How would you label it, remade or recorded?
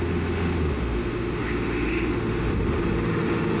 remade